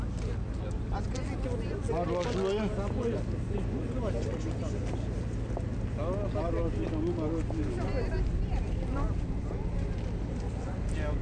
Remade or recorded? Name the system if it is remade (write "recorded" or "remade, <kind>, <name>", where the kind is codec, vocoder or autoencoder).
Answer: recorded